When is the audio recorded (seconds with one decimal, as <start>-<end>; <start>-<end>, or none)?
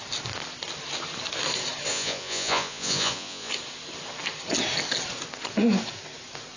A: 0.0-1.9; 3.5-6.6